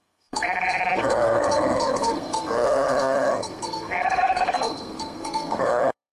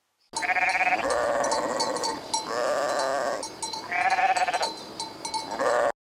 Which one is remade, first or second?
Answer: first